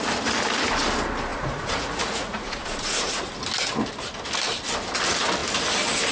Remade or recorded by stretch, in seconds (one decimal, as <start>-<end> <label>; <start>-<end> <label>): 0.0-1.3 recorded; 1.3-3.3 remade; 3.3-6.1 recorded